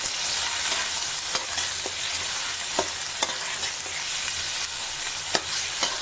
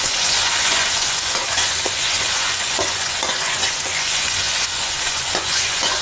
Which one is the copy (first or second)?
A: second